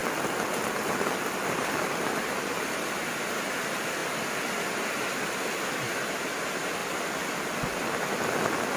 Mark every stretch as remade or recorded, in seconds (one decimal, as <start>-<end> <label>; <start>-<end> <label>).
0.0-2.1 remade; 2.1-6.8 recorded; 6.8-7.4 remade; 7.4-8.8 recorded